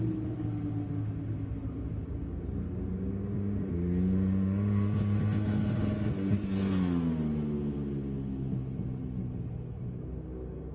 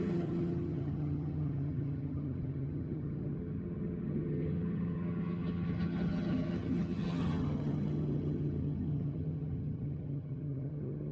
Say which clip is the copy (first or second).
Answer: second